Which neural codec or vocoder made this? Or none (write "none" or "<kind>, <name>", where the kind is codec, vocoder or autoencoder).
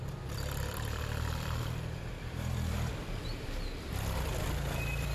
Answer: vocoder, BigVGAN v2